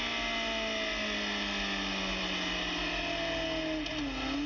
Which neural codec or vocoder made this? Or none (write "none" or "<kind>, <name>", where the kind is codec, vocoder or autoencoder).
none